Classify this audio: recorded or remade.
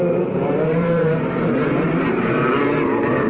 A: remade